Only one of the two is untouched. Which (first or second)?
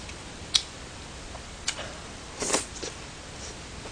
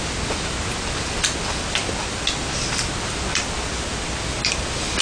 second